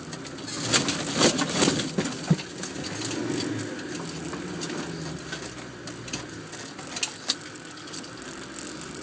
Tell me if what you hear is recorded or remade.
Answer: recorded